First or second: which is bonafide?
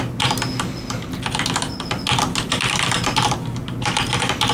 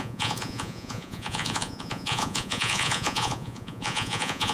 first